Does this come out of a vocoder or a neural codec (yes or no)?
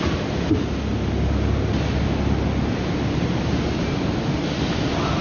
no